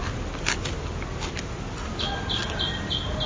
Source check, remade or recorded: recorded